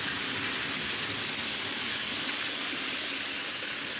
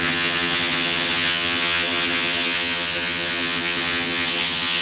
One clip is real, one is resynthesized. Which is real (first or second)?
first